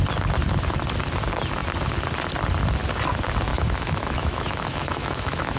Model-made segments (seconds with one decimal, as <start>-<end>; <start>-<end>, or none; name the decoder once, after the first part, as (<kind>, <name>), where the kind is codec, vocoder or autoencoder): 3.5-5.6 (autoencoder, DAC-VAE)